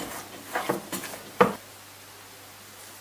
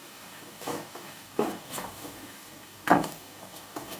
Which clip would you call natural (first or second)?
first